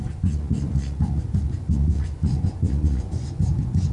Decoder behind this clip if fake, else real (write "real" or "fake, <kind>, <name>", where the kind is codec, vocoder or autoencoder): fake, vocoder, Vocos